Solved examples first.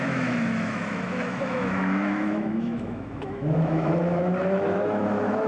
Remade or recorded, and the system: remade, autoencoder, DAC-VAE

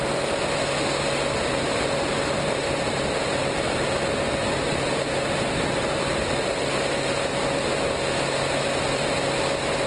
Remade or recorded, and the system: recorded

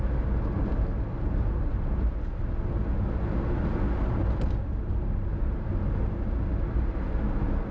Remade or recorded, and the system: recorded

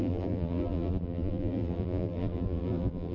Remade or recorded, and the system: remade, vocoder, BigVGAN v2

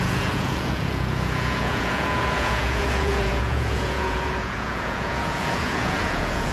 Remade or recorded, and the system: remade, vocoder, Vocos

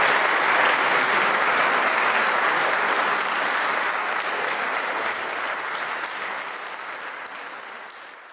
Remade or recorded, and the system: recorded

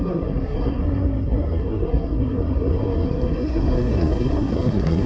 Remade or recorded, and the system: remade, codec, SNAC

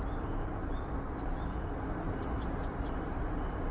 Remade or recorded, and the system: recorded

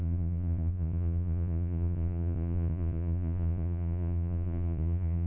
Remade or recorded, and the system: remade, vocoder, Vocos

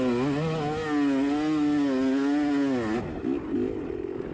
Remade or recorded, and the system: recorded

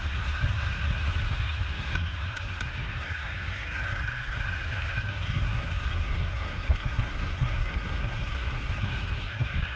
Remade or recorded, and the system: remade, codec, SNAC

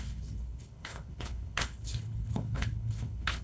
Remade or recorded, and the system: remade, codec, HILCodec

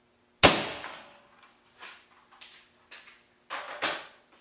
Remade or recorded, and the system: recorded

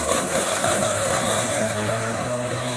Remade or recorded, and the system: remade, codec, SNAC